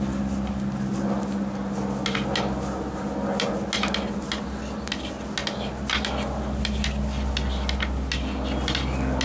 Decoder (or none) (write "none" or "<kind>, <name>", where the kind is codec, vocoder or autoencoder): none